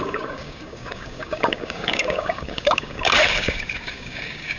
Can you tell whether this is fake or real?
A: fake